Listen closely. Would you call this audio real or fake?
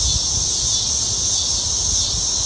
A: real